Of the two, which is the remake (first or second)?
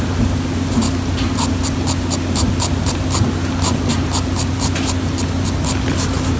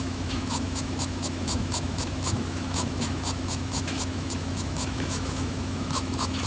second